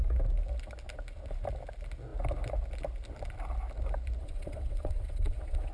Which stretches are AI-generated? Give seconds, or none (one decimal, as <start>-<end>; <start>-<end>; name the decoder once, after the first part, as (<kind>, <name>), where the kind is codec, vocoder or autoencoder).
4.2-5.7 (vocoder, WaveNeXt)